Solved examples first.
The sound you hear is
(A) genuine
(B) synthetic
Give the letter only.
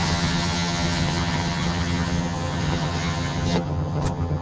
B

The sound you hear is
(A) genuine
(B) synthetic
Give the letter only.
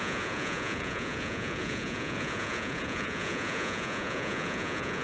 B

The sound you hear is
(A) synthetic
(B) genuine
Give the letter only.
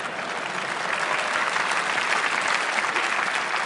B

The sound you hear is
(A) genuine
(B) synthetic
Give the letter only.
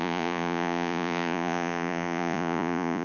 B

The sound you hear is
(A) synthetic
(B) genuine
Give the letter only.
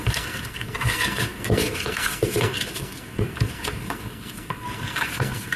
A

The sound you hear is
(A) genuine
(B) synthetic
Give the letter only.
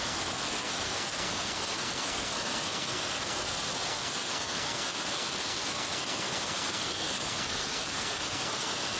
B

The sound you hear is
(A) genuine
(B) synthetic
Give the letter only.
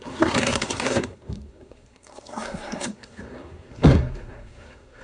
B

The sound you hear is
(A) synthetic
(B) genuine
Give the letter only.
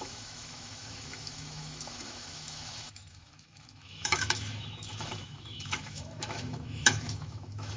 A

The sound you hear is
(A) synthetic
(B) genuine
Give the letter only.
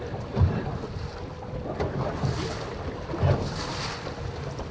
B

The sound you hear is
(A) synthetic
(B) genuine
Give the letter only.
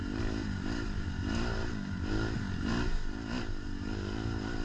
B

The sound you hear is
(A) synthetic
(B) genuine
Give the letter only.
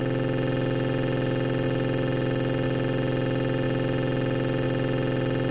B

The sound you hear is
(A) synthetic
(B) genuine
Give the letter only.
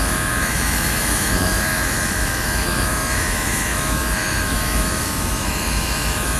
A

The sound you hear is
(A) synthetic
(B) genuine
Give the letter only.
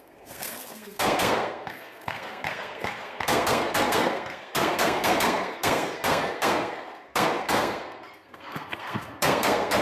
A